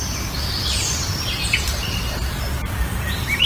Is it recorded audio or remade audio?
remade